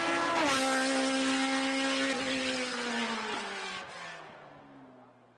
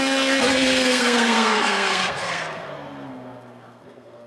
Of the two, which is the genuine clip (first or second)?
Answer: first